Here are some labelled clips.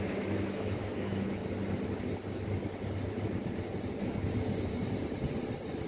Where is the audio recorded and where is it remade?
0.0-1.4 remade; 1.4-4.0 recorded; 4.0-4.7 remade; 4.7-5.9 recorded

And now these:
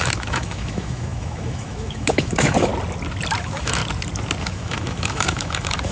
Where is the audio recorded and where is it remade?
0.0-2.7 remade; 2.7-3.4 recorded; 3.4-3.8 remade; 3.8-4.4 recorded; 4.4-5.9 remade

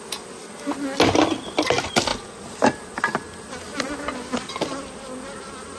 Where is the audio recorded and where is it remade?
0.0-5.8 recorded

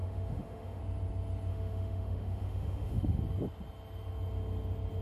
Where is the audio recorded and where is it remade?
0.0-0.8 remade; 0.8-1.5 recorded; 1.5-3.2 remade; 3.2-5.0 recorded

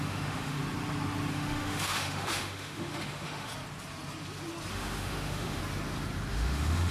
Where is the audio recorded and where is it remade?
0.0-0.6 remade; 0.6-1.3 recorded; 1.3-3.5 remade; 3.5-4.7 recorded; 4.7-5.6 remade; 5.6-6.3 recorded; 6.3-6.9 remade